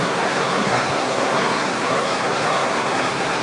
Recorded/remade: remade